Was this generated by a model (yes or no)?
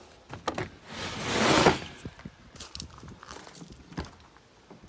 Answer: no